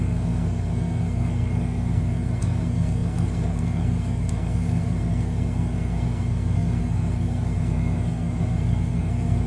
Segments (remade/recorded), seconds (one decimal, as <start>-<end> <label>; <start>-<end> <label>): 0.0-9.5 remade